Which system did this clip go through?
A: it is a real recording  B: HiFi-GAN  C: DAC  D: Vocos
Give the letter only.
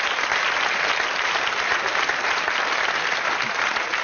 A